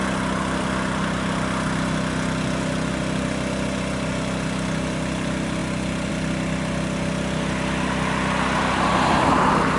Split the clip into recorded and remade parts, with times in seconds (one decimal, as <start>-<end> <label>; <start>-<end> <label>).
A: 0.0-9.8 recorded